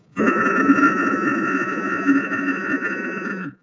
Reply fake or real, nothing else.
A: fake